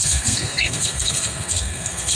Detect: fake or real fake